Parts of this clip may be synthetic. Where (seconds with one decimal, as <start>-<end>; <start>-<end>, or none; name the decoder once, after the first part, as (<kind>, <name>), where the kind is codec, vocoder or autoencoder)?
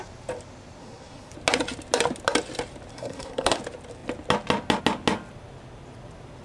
0.8-1.3 (codec, SNAC); 2.9-3.6